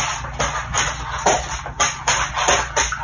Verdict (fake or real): real